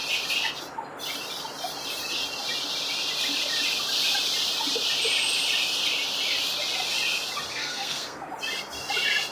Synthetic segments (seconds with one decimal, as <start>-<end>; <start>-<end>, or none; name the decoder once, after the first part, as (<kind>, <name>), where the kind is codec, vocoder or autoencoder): 7.5-8.3 (codec, SNAC)